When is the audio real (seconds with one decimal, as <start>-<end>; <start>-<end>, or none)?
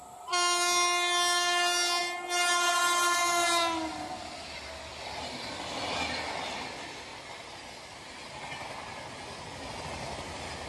0.0-10.7